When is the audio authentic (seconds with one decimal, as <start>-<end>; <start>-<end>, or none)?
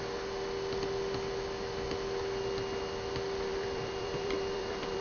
0.0-3.5